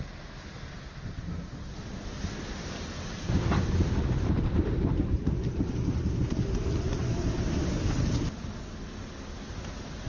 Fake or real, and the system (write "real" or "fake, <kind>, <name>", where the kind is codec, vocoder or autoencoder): real